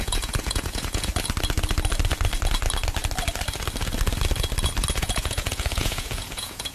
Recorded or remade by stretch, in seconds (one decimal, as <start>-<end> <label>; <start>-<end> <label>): 0.0-1.1 remade; 1.1-5.0 recorded; 5.0-6.7 remade